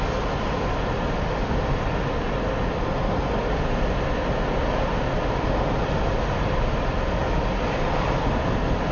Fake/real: real